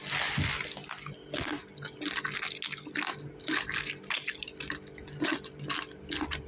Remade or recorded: recorded